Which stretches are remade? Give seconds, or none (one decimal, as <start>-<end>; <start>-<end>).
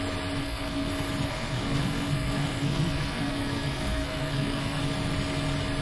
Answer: 0.4-0.9; 1.3-4.8